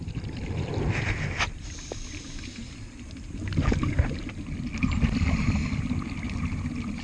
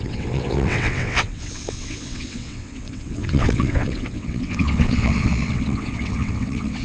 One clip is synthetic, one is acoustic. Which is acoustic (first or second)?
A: first